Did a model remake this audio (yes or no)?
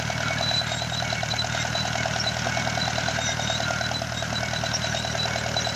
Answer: no